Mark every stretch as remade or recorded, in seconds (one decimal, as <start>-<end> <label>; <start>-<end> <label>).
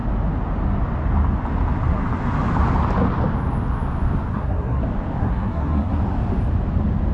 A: 0.0-4.3 recorded; 4.3-4.8 remade; 4.8-5.2 recorded; 5.2-6.0 remade; 6.0-7.1 recorded